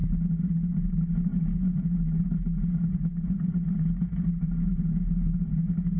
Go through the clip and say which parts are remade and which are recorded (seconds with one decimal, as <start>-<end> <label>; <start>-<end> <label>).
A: 0.0-6.0 remade